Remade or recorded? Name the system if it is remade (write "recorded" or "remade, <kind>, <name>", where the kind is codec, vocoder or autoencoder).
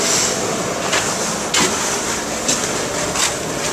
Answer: recorded